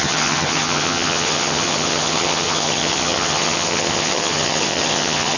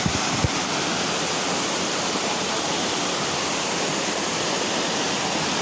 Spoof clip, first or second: first